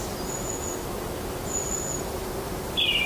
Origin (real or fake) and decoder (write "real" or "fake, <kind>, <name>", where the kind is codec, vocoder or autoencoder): real